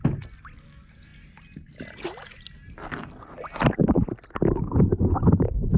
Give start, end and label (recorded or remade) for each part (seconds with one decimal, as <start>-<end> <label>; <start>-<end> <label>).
0.0-5.8 recorded